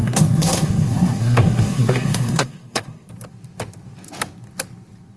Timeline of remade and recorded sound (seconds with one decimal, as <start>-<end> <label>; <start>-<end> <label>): 0.0-3.1 remade; 3.1-5.2 recorded